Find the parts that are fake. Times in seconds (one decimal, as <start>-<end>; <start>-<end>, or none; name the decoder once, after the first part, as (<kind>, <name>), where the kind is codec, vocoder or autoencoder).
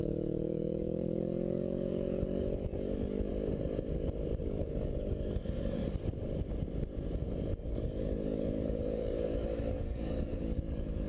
0.0-3.3 (codec, DAC); 4.4-5.8; 7.7-11.1